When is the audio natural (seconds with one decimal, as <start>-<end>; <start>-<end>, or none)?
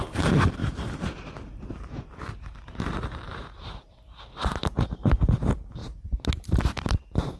none